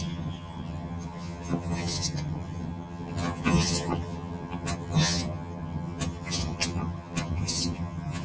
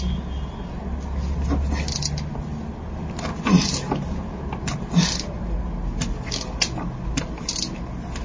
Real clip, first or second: second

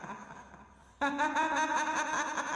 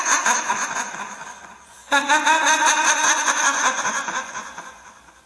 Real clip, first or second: first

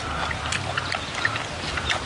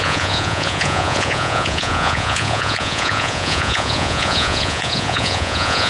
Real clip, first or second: first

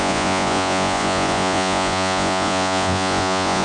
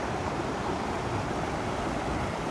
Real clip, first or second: second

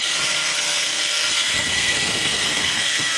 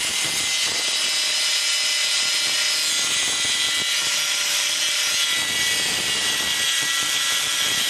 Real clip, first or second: second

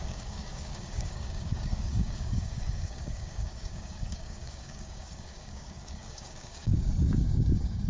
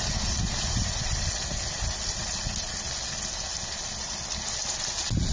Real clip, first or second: second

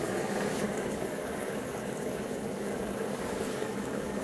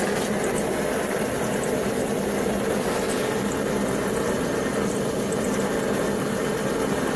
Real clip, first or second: second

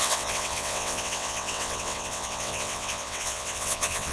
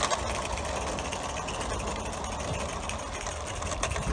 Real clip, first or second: second